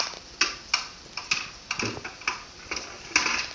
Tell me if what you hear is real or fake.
real